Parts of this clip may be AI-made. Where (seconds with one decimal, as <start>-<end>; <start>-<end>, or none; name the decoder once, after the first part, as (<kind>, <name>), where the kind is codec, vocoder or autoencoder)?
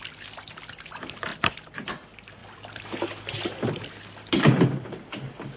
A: 1.3-1.9 (vocoder, BigVGAN v2)